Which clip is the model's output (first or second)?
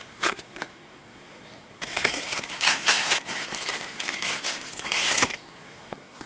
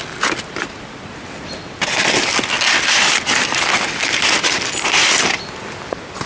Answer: first